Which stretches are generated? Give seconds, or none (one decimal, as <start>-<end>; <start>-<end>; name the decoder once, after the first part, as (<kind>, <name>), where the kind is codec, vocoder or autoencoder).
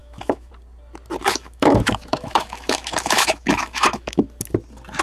0.0-0.5 (autoencoder, DAC-VAE); 1.2-4.2